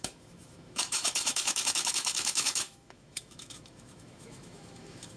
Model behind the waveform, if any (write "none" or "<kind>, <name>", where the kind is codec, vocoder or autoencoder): autoencoder, DAC-VAE